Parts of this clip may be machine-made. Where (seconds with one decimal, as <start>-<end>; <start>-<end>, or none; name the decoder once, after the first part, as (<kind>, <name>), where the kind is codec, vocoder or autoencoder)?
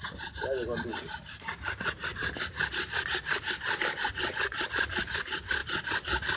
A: none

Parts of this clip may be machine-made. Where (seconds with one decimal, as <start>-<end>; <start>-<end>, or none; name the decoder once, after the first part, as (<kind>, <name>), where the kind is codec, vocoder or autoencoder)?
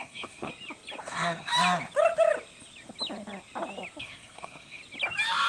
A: 0.0-0.5 (codec, SNAC); 1.0-1.5; 4.0-4.8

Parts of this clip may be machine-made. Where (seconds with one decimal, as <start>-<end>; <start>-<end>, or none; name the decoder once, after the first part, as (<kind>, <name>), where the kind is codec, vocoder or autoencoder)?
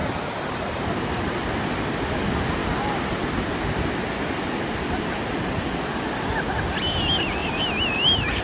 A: 0.0-1.3 (vocoder, BigVGAN v2); 7.4-8.4